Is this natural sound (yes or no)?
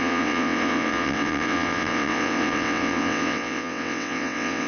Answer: no